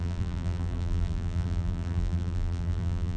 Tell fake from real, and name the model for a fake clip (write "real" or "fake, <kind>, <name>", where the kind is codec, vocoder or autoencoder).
fake, vocoder, BigVGAN v2